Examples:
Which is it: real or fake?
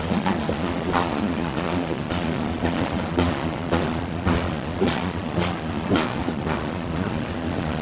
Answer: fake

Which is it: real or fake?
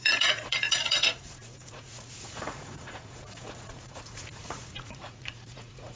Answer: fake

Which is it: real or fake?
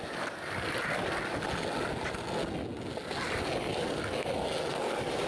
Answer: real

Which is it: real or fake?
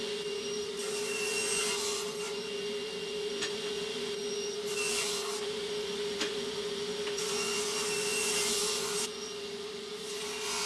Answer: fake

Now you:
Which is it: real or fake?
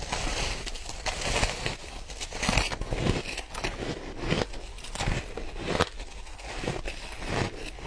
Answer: real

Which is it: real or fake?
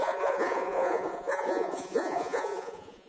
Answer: fake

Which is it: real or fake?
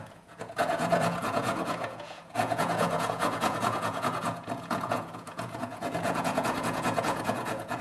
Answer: fake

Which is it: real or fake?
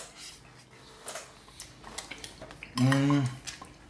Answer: real